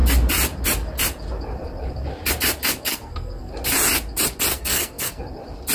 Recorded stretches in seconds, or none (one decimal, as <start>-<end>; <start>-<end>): 0.0-2.9; 3.5-4.5; 5.2-5.7